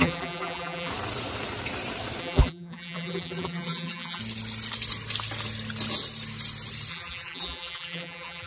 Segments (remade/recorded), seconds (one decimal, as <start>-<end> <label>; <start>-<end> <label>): 0.0-0.9 remade; 0.9-2.2 recorded; 2.2-4.2 remade; 4.2-6.9 recorded; 6.9-8.5 remade